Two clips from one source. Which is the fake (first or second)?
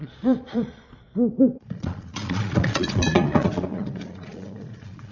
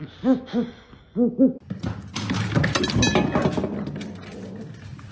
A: first